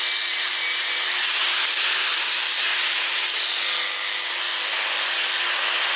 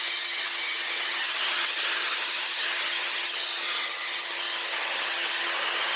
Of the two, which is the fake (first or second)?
second